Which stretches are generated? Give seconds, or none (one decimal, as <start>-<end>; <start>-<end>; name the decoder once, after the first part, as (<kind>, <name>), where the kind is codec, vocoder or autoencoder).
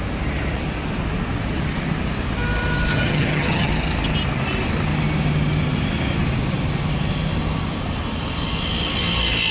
2.9-3.7 (vocoder, HiFi-GAN)